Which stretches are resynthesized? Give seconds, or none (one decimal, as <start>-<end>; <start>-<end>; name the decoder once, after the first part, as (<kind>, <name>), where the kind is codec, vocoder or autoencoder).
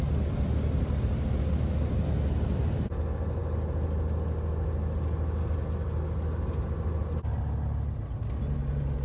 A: none